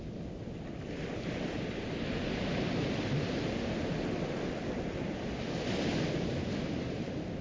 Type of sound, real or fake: real